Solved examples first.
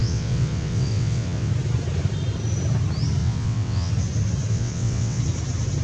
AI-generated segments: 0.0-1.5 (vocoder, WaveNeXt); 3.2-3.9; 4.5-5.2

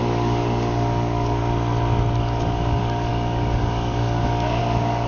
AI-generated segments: 0.0-1.4 (codec, DAC); 2.2-5.1

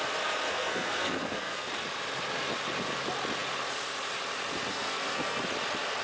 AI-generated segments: 0.5-1.7 (codec, SNAC); 4.7-5.4

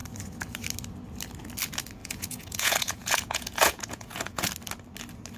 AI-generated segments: 2.0-4.5 (vocoder, Vocos)

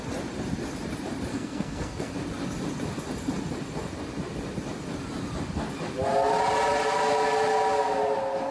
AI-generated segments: 1.3-2.1 (codec, SNAC)

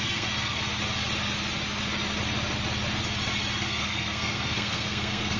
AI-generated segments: 0.0-0.6 (codec, SNAC); 3.6-5.4

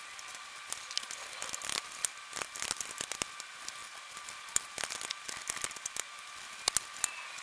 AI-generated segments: none

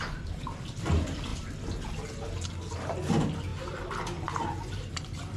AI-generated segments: none